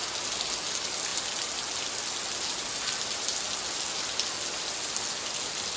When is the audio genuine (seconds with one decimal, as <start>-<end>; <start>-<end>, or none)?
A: 0.0-5.8